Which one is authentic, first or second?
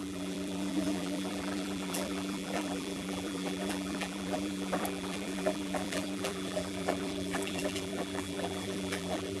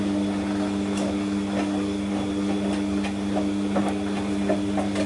second